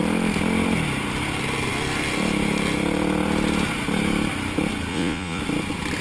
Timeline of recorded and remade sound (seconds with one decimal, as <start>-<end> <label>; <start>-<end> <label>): 0.0-4.9 recorded; 4.9-5.4 remade; 5.4-6.0 recorded